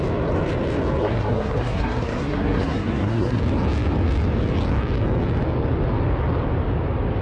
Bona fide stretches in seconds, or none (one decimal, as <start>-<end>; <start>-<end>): 0.0-1.0; 3.4-7.2